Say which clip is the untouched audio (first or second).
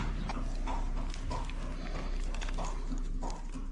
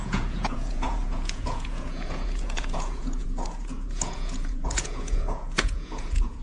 first